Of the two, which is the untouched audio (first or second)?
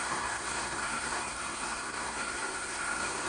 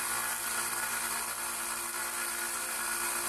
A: second